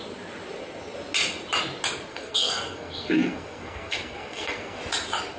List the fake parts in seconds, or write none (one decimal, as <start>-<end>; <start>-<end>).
2.1-4.8

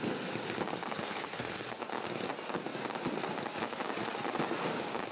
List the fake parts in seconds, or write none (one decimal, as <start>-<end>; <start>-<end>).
0.7-1.8